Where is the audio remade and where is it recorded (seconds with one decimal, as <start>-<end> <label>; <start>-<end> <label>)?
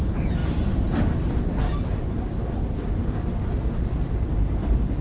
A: 0.0-0.4 recorded; 0.4-1.6 remade; 1.6-5.0 recorded